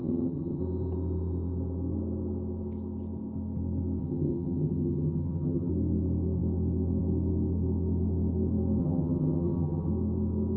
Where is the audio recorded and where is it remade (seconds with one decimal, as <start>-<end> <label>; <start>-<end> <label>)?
0.0-0.6 remade; 0.6-4.0 recorded; 4.0-5.7 remade; 5.7-8.8 recorded; 8.8-9.9 remade; 9.9-10.6 recorded